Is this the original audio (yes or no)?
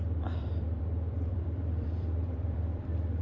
no